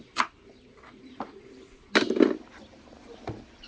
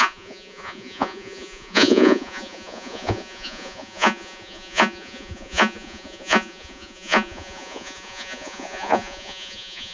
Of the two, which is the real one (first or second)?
first